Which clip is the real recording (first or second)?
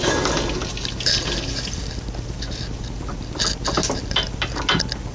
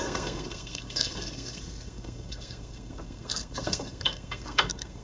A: first